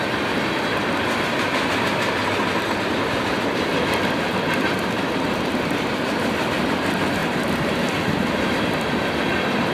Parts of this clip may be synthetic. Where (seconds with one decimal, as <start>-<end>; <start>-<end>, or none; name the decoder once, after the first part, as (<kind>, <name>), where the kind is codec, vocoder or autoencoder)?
0.0-2.2 (vocoder, BigVGAN v2); 2.9-7.2; 8.4-9.7